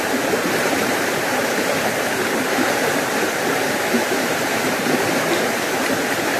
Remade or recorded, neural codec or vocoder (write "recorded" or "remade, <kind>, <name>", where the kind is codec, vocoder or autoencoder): remade, vocoder, BigVGAN v2